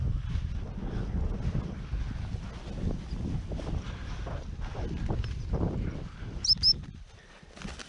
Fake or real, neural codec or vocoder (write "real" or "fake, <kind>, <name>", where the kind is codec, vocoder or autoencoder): real